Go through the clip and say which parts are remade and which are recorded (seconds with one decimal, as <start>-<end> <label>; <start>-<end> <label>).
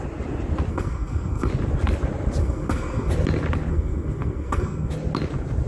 0.0-0.7 recorded; 0.7-1.5 remade; 1.5-2.4 recorded; 2.4-3.1 remade; 3.1-3.7 recorded; 3.7-4.9 remade; 4.9-5.7 recorded